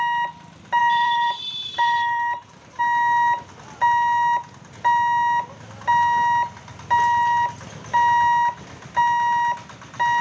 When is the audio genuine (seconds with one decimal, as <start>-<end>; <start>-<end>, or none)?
0.0-0.8; 2.8-10.2